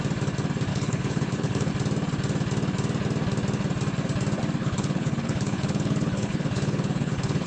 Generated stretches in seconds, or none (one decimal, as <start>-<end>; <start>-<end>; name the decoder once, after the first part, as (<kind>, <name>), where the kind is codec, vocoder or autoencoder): 0.7-1.7 (codec, HILCodec); 4.6-7.5